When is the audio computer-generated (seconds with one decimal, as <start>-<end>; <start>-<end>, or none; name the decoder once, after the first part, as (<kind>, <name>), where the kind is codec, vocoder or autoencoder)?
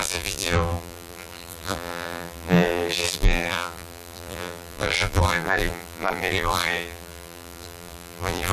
0.0-8.5 (vocoder, BigVGAN v2)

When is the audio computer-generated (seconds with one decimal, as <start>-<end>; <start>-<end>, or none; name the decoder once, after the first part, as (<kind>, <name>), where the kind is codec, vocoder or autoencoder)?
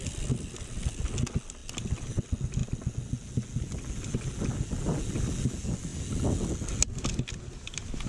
none